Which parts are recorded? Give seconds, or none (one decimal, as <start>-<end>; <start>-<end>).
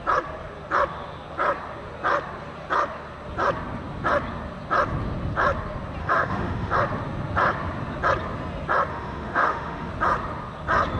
0.0-6.0; 6.7-8.9; 9.9-11.0